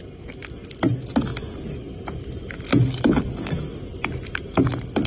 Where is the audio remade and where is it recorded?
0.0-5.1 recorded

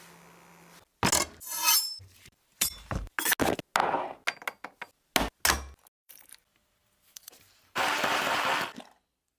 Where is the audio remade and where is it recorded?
0.0-1.6 recorded; 1.6-3.1 remade; 3.1-6.0 recorded; 6.0-8.4 remade; 8.4-9.4 recorded

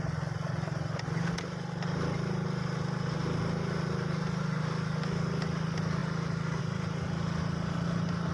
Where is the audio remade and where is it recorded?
0.0-8.3 recorded

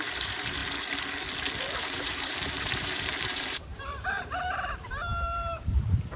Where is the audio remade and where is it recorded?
0.0-0.6 remade; 0.6-1.8 recorded; 1.8-6.2 remade

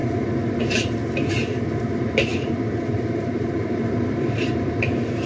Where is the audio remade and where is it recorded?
0.0-0.6 recorded; 0.6-1.0 remade; 1.0-1.9 recorded; 1.9-5.3 remade

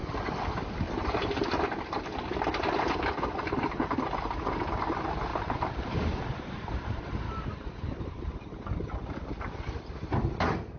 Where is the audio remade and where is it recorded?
0.0-0.9 remade; 0.9-5.3 recorded; 5.3-8.2 remade; 8.2-10.8 recorded

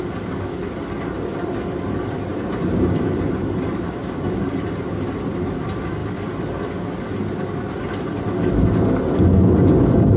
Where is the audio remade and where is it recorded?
0.0-2.3 recorded; 2.3-5.5 remade; 5.5-10.2 recorded